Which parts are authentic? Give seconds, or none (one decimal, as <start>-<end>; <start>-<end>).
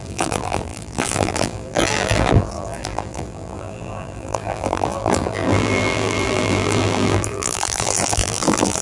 none